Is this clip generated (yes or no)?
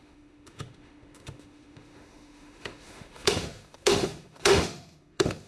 yes